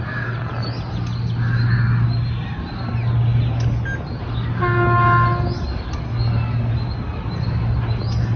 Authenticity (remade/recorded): recorded